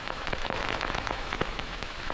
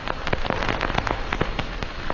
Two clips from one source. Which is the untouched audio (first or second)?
second